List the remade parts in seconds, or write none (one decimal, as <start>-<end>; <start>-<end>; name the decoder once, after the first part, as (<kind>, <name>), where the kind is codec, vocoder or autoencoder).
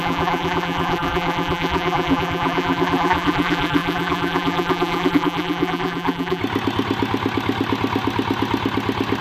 0.0-6.4 (vocoder, BigVGAN v2)